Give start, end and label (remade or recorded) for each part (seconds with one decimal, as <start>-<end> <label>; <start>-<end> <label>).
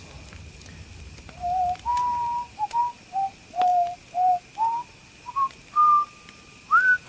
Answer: 0.0-7.1 recorded